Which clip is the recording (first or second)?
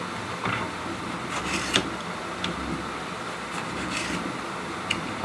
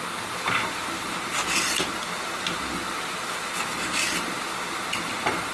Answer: second